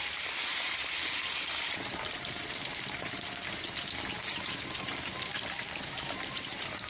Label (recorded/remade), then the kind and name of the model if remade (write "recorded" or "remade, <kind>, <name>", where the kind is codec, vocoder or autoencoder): remade, vocoder, BigVGAN v2